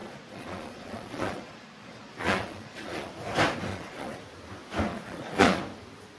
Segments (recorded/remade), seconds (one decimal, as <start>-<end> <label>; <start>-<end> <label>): 0.0-3.1 remade; 3.1-3.7 recorded; 3.7-4.2 remade; 4.2-4.9 recorded; 4.9-5.6 remade; 5.6-6.2 recorded